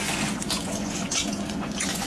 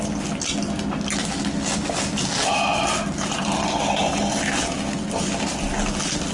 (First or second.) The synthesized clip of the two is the first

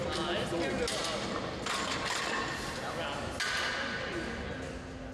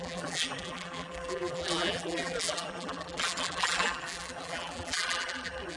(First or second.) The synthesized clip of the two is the second